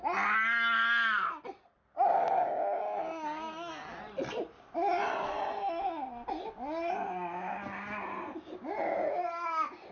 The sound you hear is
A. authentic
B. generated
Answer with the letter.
A